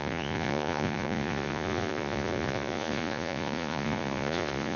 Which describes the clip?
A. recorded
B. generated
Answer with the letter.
B